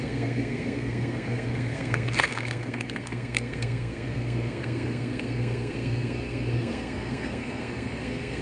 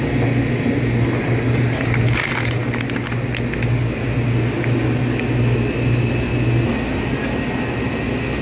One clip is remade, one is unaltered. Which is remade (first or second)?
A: first